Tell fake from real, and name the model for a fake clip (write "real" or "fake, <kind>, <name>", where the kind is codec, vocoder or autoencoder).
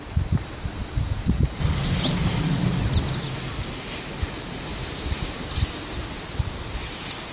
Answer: real